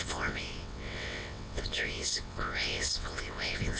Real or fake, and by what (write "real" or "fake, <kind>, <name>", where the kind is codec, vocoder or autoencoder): fake, vocoder, WaveNeXt